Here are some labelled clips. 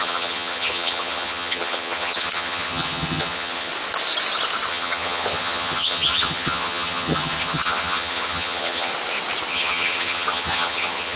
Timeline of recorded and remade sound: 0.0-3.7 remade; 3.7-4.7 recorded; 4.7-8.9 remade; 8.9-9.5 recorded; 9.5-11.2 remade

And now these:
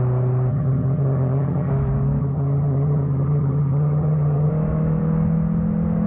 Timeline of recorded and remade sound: 0.0-0.5 recorded; 0.5-1.7 remade; 1.7-2.2 recorded; 2.2-4.5 remade; 4.5-6.1 recorded

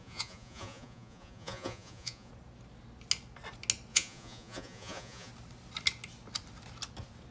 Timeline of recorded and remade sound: 0.0-2.3 remade; 2.3-3.9 recorded; 3.9-5.3 remade; 5.3-7.3 recorded

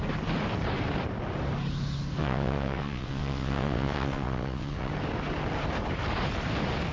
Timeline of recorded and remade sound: 0.0-2.2 recorded; 2.2-4.9 remade; 4.9-6.9 recorded

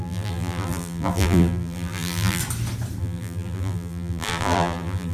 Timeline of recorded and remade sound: 0.0-2.4 remade; 2.4-3.0 recorded; 3.0-5.1 remade

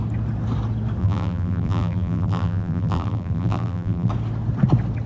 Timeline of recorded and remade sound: 0.0-1.0 recorded; 1.0-4.1 remade; 4.1-5.1 recorded